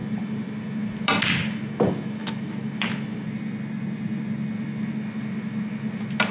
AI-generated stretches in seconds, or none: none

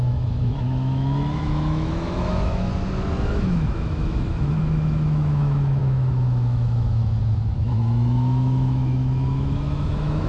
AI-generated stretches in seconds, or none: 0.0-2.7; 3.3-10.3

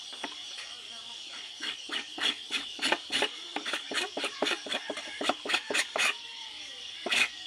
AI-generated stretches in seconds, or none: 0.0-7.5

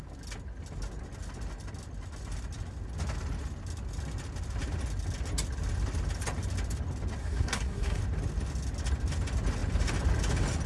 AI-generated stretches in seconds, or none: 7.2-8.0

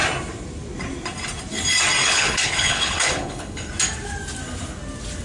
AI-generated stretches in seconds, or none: 2.0-3.7

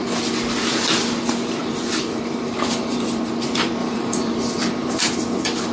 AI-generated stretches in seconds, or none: 1.6-3.3; 3.8-5.0